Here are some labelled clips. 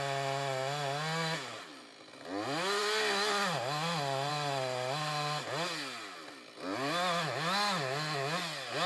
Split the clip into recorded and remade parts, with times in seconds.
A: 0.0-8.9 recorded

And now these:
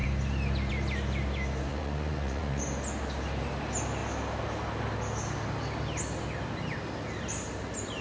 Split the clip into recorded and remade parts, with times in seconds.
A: 0.0-1.7 recorded; 1.7-2.6 remade; 2.6-8.0 recorded

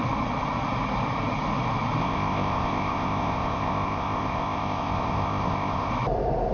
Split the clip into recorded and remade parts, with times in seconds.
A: 0.0-2.0 recorded; 2.0-5.9 remade; 5.9-6.5 recorded

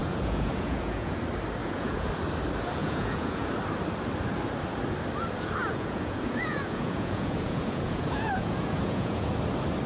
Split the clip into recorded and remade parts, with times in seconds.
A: 0.0-1.2 remade; 1.2-1.6 recorded; 1.6-2.1 remade; 2.1-2.8 recorded; 2.8-3.5 remade; 3.5-5.6 recorded; 5.6-9.3 remade; 9.3-9.9 recorded

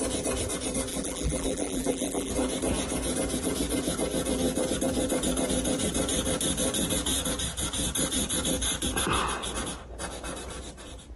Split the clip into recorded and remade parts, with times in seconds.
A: 0.0-0.9 recorded; 0.9-2.3 remade; 2.3-11.2 recorded

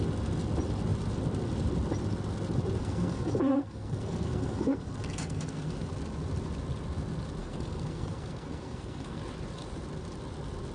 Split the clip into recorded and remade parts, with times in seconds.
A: 0.0-2.8 recorded; 2.8-5.9 remade; 5.9-7.4 recorded; 7.4-9.2 remade; 9.2-10.7 recorded

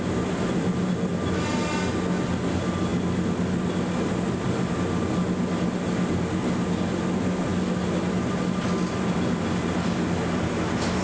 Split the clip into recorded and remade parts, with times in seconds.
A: 0.0-11.0 recorded